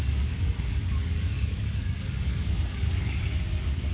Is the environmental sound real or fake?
fake